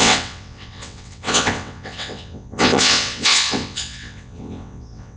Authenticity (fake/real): fake